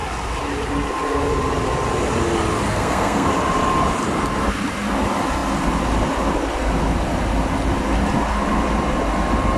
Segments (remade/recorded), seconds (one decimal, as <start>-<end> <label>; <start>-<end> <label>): 0.0-2.7 recorded; 2.7-3.3 remade; 3.3-9.6 recorded